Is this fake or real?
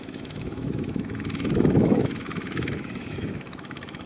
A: fake